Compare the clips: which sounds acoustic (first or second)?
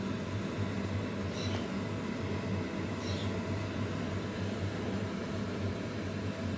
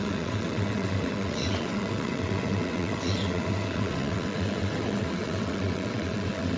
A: first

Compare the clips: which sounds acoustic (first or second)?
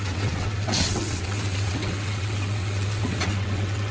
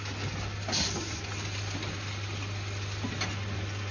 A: second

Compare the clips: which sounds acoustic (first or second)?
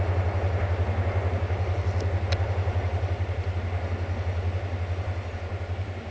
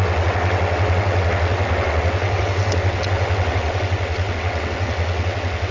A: first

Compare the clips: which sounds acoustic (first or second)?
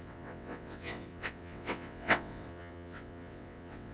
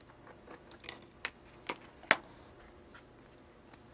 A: second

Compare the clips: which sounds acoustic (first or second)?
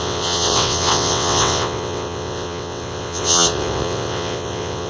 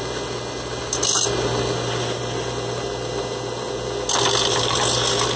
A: second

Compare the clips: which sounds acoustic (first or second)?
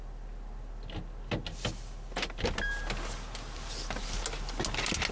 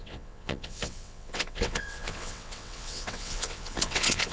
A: first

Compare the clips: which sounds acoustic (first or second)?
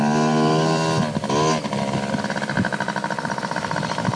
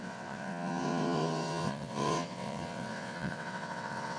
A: first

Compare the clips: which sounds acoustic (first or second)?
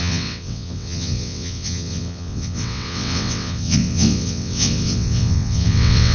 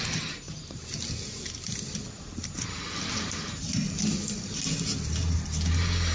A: second